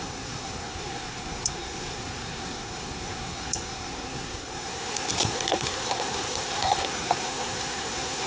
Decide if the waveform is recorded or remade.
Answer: remade